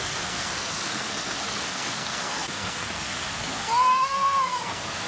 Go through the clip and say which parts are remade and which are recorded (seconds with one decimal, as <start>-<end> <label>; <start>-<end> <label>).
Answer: 0.0-5.1 remade

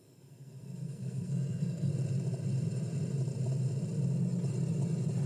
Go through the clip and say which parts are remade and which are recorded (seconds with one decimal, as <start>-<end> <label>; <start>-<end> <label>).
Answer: 0.0-1.9 remade; 1.9-5.3 recorded

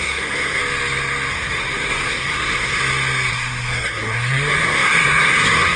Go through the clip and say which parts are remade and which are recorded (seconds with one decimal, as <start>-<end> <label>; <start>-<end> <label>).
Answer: 0.0-0.6 remade; 0.6-1.3 recorded; 1.3-2.8 remade; 2.8-3.3 recorded; 3.3-5.8 remade

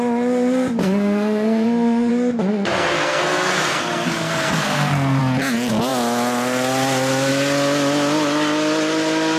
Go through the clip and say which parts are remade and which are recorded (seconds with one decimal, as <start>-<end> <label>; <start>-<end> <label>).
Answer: 0.0-0.8 recorded; 0.8-2.1 remade; 2.1-2.5 recorded; 2.5-5.2 remade; 5.2-9.4 recorded

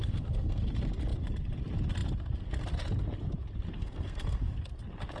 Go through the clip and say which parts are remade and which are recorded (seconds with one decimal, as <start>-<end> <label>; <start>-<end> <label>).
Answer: 0.0-0.6 remade; 0.6-3.8 recorded; 3.8-4.4 remade; 4.4-5.2 recorded

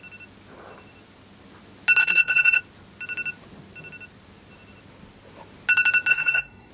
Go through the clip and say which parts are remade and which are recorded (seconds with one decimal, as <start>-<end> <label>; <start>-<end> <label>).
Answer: 0.0-2.0 recorded; 2.0-2.6 remade; 2.6-6.1 recorded; 6.1-6.7 remade

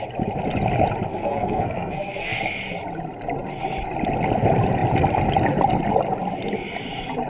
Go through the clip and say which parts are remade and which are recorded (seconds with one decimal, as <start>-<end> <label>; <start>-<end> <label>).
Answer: 0.0-1.1 recorded; 1.1-2.5 remade; 2.5-7.3 recorded

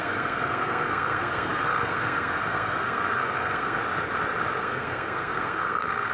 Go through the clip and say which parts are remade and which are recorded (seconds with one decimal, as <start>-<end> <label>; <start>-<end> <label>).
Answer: 0.0-3.8 remade; 3.8-4.6 recorded; 4.6-6.1 remade